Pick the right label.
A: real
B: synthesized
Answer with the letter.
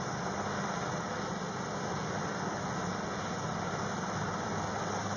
A